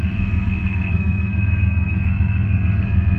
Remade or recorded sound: remade